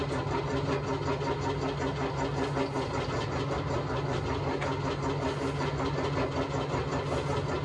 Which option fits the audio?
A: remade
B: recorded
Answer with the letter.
B